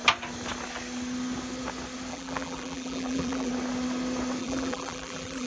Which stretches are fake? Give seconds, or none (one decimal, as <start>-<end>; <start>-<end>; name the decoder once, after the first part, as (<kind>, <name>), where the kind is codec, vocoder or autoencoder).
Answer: 2.1-3.5 (vocoder, BigVGAN v2); 4.4-5.5

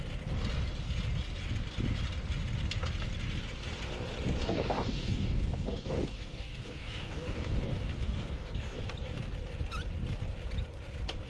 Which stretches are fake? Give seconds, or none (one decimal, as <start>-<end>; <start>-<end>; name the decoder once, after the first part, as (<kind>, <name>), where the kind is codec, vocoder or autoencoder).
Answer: 4.4-8.8 (codec, DAC)

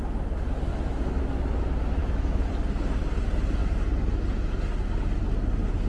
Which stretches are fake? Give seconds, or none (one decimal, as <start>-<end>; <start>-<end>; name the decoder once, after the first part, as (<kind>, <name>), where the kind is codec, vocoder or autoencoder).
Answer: 0.7-1.2 (autoencoder, DAC-VAE); 2.0-2.5

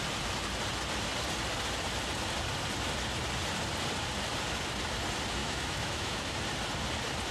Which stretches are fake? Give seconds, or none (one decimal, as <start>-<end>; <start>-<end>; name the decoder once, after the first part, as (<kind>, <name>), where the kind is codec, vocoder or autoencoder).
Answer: 5.4-6.4 (autoencoder, DAC-VAE)